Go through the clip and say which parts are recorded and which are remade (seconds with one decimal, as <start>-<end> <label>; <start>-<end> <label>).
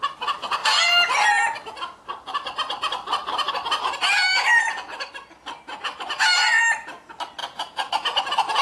0.0-7.4 recorded; 7.4-7.9 remade; 7.9-8.6 recorded